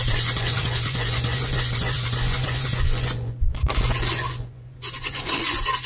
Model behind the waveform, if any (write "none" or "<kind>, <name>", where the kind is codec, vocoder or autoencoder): vocoder, Vocos